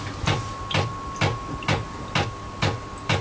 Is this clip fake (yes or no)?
no